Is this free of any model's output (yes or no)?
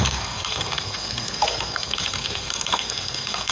no